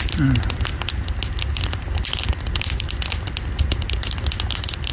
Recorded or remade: recorded